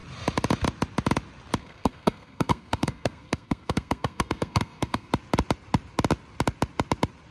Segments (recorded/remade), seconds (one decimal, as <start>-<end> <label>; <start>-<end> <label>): 0.0-1.6 recorded; 1.6-5.1 remade; 5.1-7.3 recorded